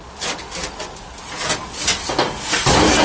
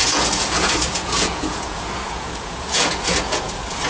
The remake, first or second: second